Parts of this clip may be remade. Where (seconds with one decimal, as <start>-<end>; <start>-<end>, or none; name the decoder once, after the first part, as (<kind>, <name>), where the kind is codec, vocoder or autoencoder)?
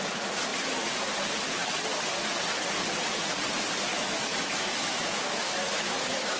3.9-6.4 (autoencoder, DAC-VAE)